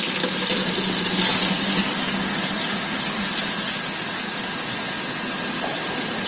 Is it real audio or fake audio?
real